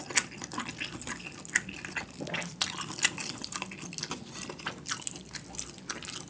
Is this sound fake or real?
real